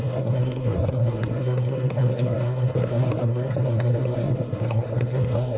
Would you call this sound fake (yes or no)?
yes